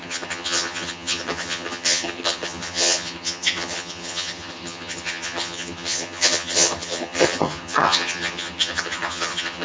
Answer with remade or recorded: remade